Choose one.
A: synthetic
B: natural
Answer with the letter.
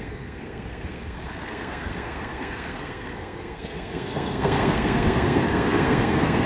A